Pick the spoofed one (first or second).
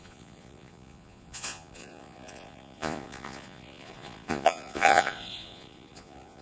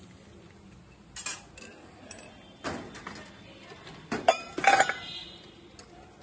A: first